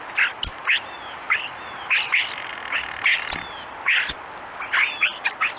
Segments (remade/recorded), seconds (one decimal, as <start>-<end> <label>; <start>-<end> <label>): 0.0-0.5 recorded; 0.5-2.5 remade; 2.5-3.1 recorded; 3.1-4.1 remade; 4.1-5.6 recorded